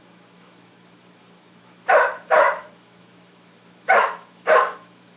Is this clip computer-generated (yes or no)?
yes